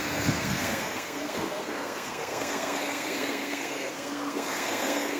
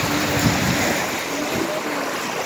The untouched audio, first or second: second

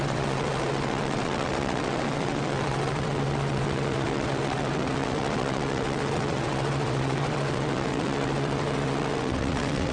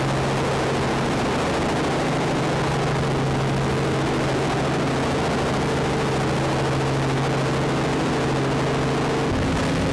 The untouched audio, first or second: second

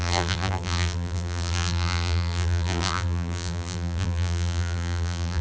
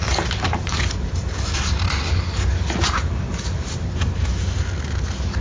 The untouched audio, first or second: second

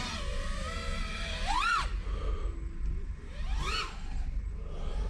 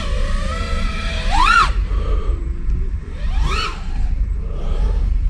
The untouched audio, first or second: first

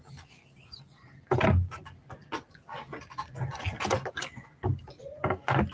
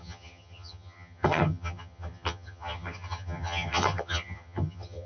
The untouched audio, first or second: first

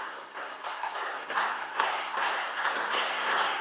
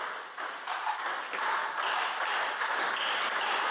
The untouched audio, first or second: second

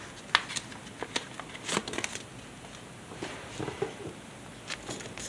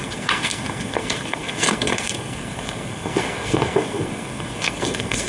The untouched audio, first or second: first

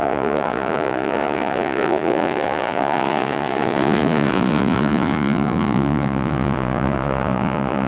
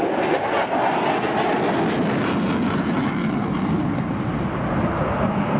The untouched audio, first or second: second